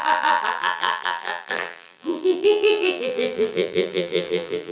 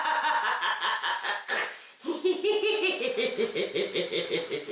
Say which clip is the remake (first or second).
first